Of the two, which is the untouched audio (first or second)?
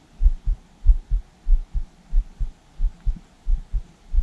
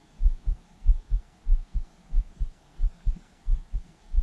first